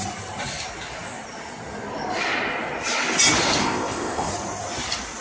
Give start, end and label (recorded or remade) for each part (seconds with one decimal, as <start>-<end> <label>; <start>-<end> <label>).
0.0-3.6 recorded; 3.6-4.3 remade; 4.3-5.2 recorded